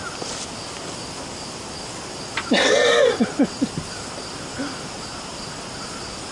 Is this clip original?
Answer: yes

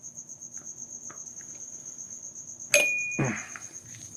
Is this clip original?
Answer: yes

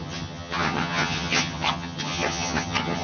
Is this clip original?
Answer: no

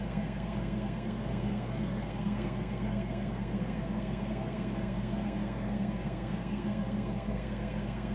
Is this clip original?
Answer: no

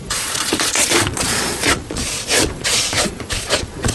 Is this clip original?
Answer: no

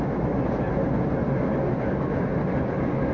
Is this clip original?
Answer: yes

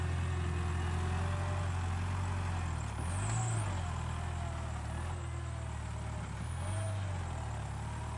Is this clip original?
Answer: yes